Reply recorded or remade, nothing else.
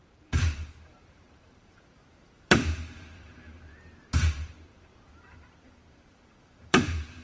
remade